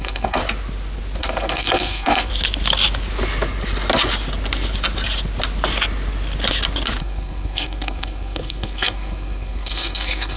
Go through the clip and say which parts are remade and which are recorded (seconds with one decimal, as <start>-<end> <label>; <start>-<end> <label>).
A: 0.0-0.4 remade; 0.4-1.2 recorded; 1.2-2.3 remade; 2.3-7.0 recorded; 7.0-10.4 remade